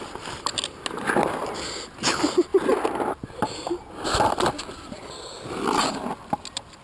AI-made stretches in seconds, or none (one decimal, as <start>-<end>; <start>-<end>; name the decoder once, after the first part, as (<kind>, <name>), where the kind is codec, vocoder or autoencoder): none